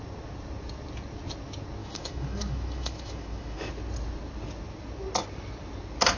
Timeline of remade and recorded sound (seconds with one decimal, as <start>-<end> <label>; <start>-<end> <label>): 0.0-1.8 recorded; 1.8-3.7 remade; 3.7-6.2 recorded